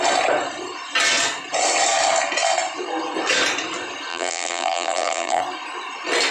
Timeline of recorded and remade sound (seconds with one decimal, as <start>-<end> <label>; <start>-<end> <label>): 0.0-4.1 recorded; 4.1-5.4 remade; 5.4-6.3 recorded